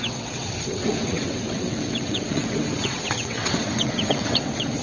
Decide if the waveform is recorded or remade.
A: remade